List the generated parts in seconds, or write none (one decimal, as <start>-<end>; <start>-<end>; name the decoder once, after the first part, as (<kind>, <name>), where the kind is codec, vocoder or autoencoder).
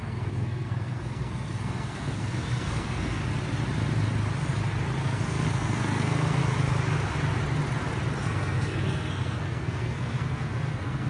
0.0-3.2 (codec, SNAC); 5.0-6.4; 8.2-11.1